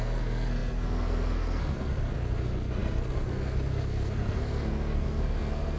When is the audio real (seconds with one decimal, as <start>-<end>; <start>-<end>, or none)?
none